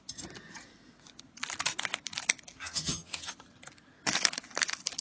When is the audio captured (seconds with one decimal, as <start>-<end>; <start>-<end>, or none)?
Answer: 0.0-2.6; 3.3-5.0